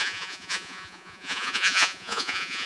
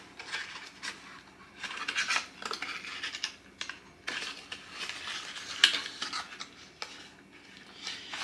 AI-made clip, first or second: first